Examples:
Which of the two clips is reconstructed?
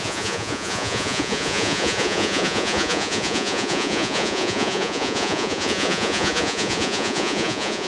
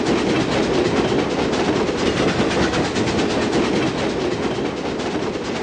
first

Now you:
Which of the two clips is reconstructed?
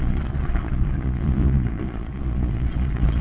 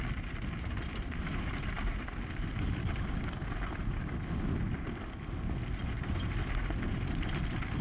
first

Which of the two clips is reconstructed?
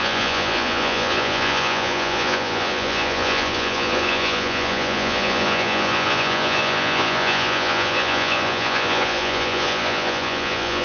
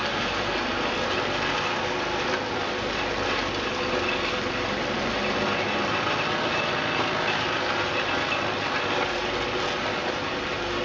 first